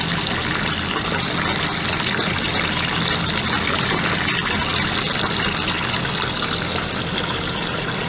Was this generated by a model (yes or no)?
no